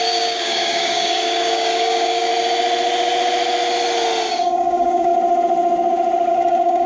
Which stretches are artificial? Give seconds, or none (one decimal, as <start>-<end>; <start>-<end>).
0.0-2.3; 4.3-5.1; 6.3-6.9